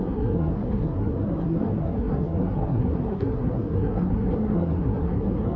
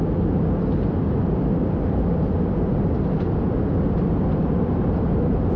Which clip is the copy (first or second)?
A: first